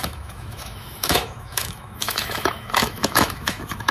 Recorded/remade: remade